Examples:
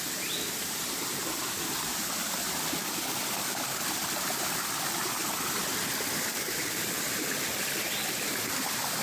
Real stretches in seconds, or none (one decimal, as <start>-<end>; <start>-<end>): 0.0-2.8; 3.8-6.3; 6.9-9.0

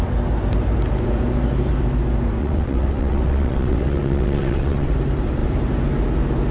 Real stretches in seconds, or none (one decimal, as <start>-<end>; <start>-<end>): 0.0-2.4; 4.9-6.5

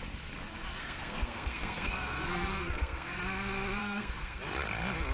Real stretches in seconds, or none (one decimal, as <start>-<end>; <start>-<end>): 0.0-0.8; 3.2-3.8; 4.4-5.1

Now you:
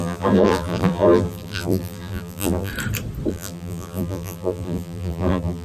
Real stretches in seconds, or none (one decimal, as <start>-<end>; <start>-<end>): 2.7-3.3

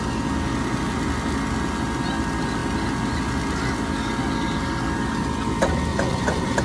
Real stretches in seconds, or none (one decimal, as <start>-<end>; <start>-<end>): 0.0-5.9

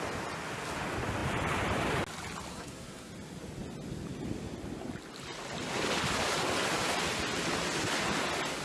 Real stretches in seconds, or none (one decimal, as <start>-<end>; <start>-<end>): 0.0-2.5; 3.1-8.6

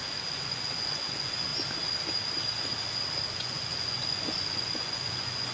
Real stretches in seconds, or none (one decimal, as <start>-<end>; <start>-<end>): 1.5-3.2